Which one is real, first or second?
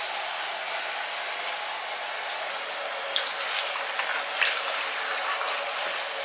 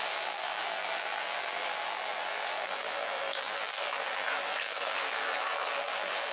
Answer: first